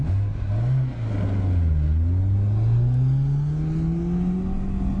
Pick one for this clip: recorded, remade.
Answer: recorded